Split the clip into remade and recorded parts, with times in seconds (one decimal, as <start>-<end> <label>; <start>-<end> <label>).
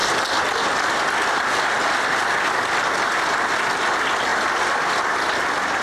0.0-4.3 recorded; 4.3-5.0 remade; 5.0-5.8 recorded